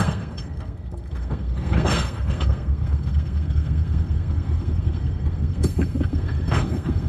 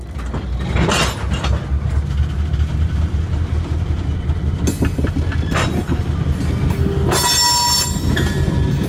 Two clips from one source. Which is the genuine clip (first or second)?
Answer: second